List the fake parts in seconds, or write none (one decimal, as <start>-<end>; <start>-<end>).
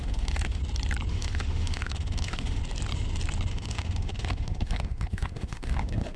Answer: 0.0-0.6; 1.1-2.6; 3.5-6.2